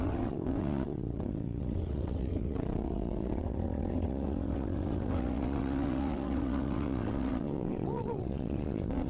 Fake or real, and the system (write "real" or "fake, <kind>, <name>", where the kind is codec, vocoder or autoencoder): fake, vocoder, WaveNeXt